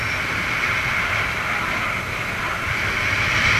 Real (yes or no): yes